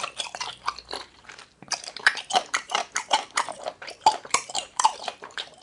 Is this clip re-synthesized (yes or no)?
yes